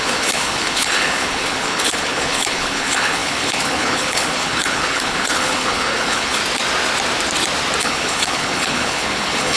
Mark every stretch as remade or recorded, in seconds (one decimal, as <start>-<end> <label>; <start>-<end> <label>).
0.0-6.4 remade; 6.4-7.8 recorded; 7.8-9.6 remade

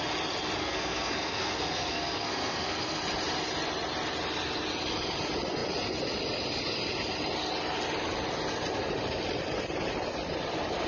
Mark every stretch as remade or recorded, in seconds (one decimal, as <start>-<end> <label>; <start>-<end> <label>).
0.0-0.6 recorded; 0.6-3.0 remade; 3.0-10.9 recorded

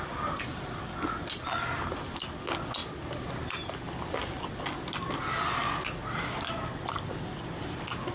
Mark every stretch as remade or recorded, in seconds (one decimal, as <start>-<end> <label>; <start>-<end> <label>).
0.0-8.1 recorded

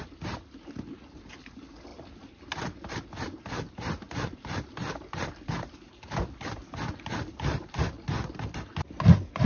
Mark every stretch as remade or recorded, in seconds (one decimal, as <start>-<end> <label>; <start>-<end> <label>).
0.0-9.5 recorded

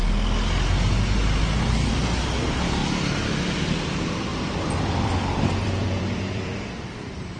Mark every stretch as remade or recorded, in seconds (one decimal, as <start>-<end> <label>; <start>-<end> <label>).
0.0-4.3 recorded; 4.3-7.4 remade